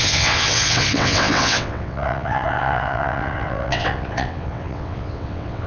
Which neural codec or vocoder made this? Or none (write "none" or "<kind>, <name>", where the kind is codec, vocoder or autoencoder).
vocoder, WaveNeXt